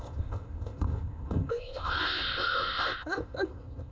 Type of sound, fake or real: fake